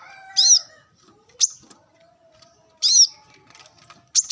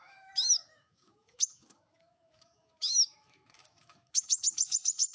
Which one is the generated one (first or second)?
second